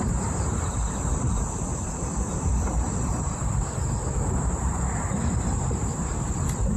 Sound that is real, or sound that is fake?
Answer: fake